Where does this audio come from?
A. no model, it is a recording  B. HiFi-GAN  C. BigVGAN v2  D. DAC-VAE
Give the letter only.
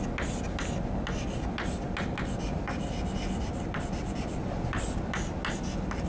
A